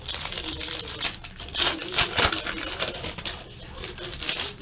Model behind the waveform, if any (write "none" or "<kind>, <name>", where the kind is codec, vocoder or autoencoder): vocoder, BigVGAN v2